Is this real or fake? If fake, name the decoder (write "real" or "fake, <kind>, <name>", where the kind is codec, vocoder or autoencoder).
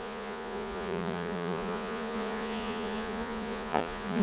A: fake, vocoder, Vocos